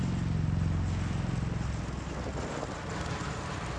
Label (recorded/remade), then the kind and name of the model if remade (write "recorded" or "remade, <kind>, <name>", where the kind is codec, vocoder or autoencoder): recorded